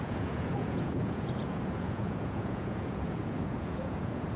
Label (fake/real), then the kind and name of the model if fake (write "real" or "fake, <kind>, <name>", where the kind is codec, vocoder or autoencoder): fake, vocoder, Vocos